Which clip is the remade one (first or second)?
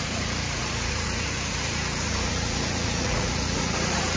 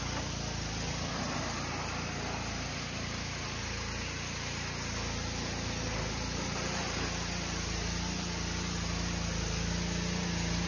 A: first